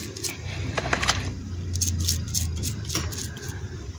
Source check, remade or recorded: recorded